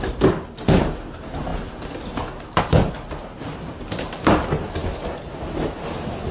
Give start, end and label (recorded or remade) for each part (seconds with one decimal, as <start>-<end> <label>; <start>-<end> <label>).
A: 0.0-6.3 recorded